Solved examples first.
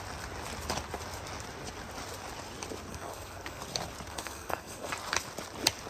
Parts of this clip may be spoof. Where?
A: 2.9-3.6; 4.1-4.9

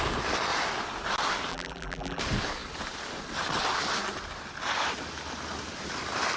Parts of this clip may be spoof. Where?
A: 1.5-2.2

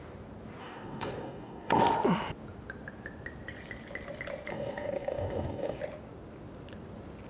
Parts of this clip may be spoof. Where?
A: 0.6-1.8; 4.5-5.8

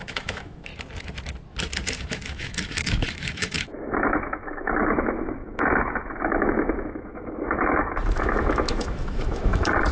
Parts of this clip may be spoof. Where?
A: 0.0-0.7; 2.0-9.9

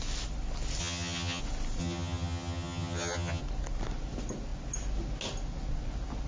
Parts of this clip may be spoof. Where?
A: 0.8-1.4; 1.8-3.4